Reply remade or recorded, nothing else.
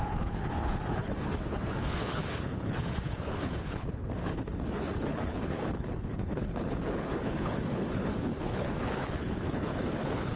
remade